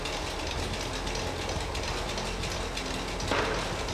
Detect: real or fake real